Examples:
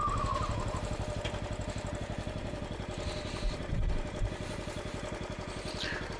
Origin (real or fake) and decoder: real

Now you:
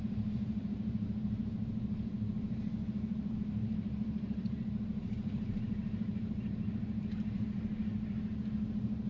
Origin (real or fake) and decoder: fake, vocoder, BigVGAN v2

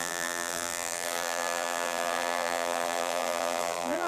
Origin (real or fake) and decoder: fake, vocoder, BigVGAN v2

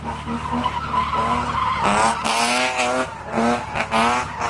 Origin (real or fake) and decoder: real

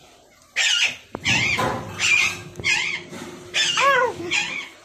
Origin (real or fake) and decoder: real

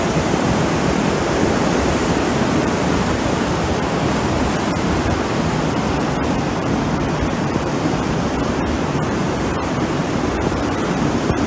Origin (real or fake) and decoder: fake, vocoder, BigVGAN v2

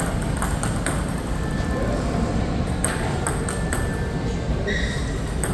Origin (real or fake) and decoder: real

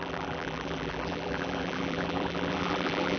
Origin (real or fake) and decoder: fake, vocoder, BigVGAN v2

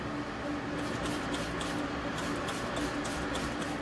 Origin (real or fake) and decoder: real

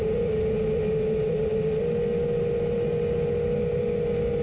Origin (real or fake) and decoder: real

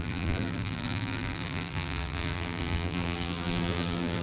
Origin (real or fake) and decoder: fake, vocoder, BigVGAN v2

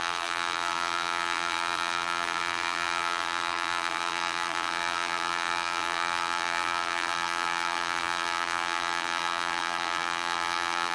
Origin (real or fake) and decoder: fake, vocoder, BigVGAN v2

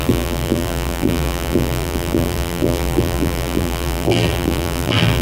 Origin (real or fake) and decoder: fake, vocoder, BigVGAN v2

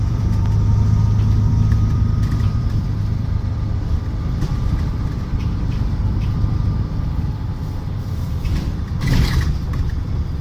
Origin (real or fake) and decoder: fake, vocoder, BigVGAN v2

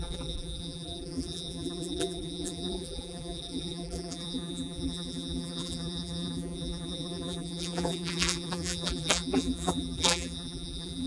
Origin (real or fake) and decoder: fake, vocoder, BigVGAN v2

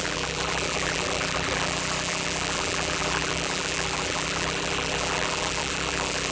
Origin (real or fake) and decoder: fake, vocoder, BigVGAN v2